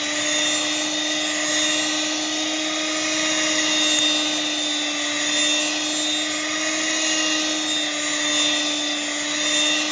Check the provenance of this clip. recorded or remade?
recorded